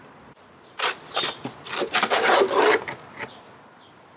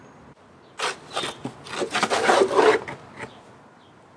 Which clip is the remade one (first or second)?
first